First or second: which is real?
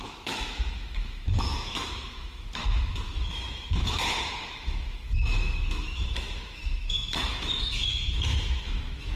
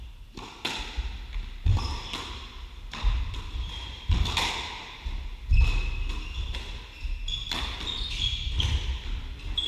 second